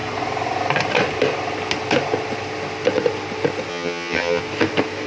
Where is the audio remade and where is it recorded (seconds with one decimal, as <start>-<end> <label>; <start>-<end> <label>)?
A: 0.0-3.7 recorded; 3.7-4.4 remade; 4.4-5.1 recorded